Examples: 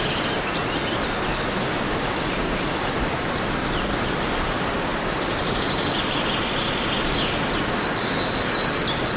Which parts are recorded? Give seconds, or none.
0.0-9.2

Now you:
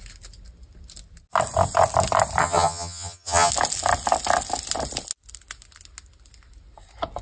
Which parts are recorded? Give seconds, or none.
0.0-2.4; 3.5-7.2

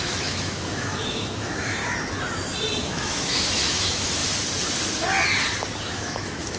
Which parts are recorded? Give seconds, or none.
1.8-2.8; 4.2-5.8